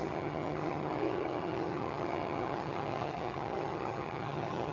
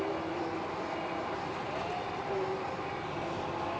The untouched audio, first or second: second